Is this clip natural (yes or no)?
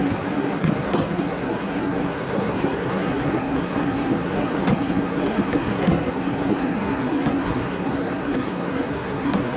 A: no